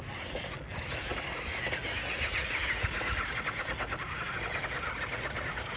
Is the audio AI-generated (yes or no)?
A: no